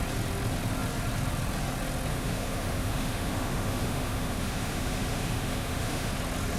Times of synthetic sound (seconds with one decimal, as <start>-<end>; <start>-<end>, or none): 2.1-6.1